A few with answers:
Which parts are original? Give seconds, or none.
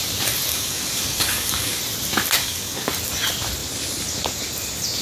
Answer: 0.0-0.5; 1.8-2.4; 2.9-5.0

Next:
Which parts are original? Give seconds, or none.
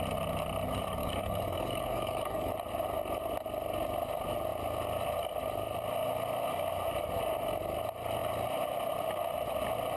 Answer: 0.0-1.0; 2.5-10.0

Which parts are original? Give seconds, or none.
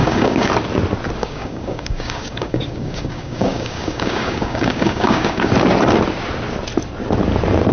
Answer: 0.5-1.2; 5.5-7.7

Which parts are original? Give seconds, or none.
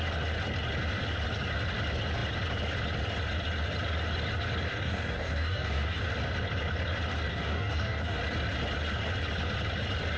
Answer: 0.0-4.7; 6.0-7.3; 8.2-10.2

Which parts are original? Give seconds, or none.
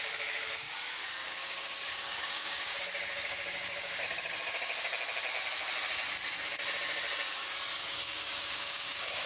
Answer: 4.9-7.7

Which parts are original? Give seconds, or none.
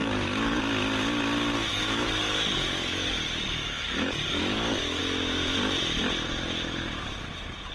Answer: 0.6-1.7; 5.0-7.7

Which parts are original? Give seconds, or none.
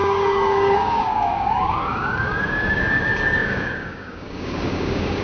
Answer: none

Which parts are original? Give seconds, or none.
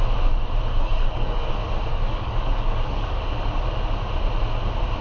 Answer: 0.0-0.7; 1.5-1.9; 3.2-5.0